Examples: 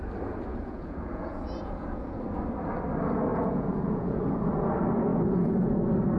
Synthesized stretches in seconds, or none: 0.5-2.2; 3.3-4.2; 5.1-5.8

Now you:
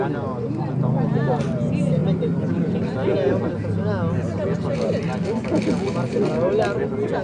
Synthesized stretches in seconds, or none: none